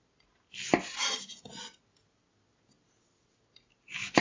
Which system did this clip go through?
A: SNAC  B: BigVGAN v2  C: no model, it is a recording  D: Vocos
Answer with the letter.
C